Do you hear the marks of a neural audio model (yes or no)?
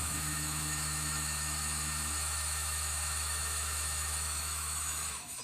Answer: yes